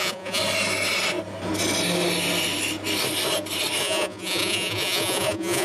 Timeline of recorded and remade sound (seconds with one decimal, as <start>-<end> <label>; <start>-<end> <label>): 0.0-0.4 remade; 0.4-3.8 recorded; 3.8-5.6 remade